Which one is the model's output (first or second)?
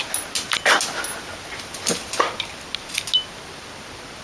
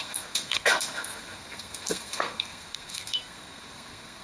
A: second